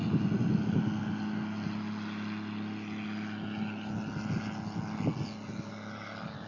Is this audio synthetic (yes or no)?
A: no